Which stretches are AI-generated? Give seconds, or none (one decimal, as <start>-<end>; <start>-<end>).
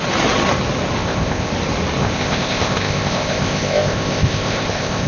1.0-1.5; 2.0-5.1